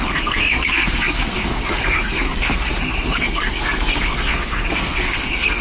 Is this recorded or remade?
remade